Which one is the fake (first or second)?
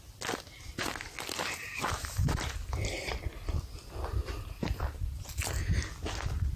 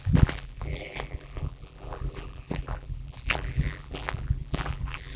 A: second